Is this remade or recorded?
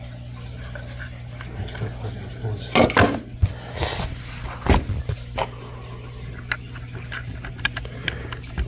recorded